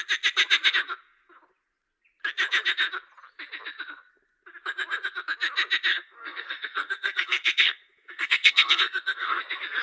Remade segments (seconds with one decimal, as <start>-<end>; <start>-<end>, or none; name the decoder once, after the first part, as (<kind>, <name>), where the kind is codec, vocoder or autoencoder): 5.9-9.4 (codec, SNAC)